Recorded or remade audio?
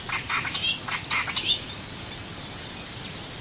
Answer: recorded